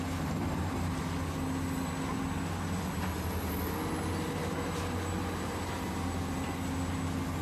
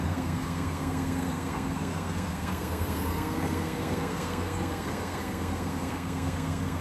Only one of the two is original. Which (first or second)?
first